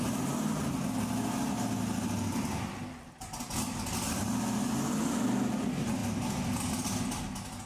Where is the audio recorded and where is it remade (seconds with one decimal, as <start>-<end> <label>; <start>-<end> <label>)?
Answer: 0.0-7.7 recorded